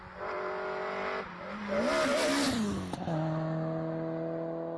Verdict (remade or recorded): recorded